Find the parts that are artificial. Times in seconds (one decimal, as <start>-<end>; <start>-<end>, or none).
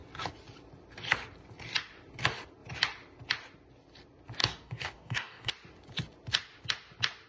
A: 4.4-5.5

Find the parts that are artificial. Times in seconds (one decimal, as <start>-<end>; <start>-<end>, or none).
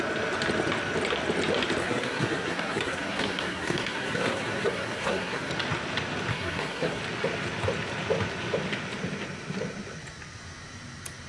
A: 1.8-5.5; 6.3-7.0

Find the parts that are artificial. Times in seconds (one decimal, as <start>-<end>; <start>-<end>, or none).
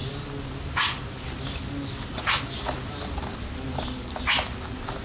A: none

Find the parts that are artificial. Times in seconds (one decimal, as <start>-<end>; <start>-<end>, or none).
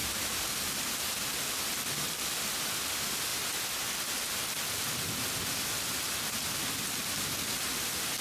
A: none